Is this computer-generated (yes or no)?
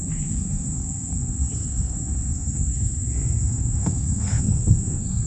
yes